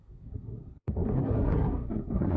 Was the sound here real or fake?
fake